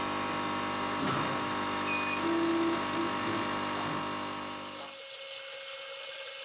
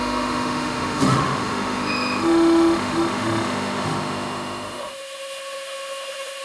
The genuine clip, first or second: first